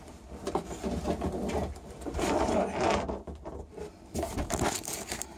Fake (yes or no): yes